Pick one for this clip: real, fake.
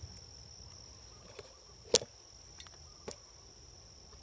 real